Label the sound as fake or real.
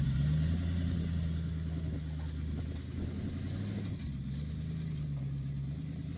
real